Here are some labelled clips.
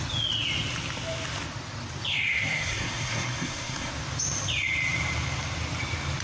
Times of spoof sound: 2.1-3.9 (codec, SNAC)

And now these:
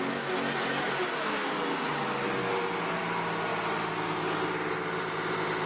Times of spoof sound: none

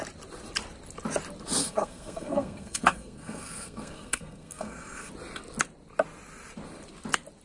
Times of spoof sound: 1.6-5.1 (codec, SNAC)

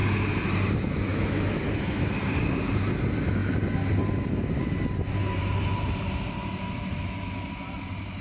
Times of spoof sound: 1.1-2.1 (autoencoder, DAC-VAE); 6.9-7.5

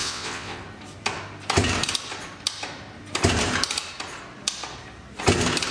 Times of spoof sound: 0.0-0.6 (vocoder, WaveNeXt)

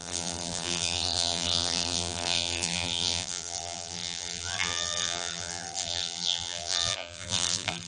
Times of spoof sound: 0.0-7.9 (vocoder, BigVGAN v2)

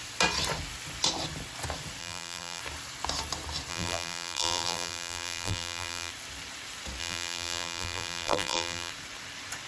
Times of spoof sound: 2.0-2.6 (vocoder, BigVGAN v2); 3.7-6.1; 7.0-8.9

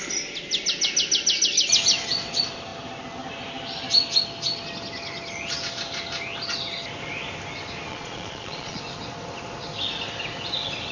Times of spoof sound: 7.9-8.8 (vocoder, Vocos)